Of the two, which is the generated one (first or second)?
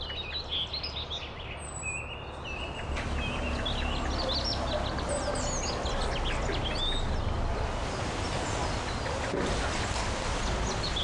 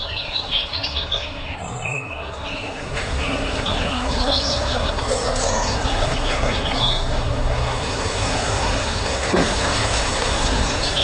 second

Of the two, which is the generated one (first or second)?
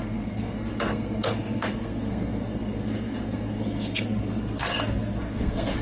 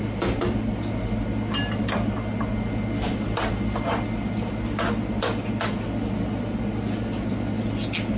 first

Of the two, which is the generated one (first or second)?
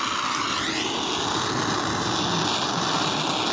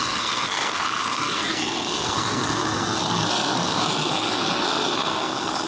second